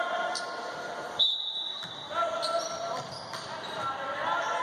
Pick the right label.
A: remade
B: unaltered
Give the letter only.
A